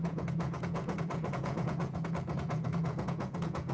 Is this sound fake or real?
fake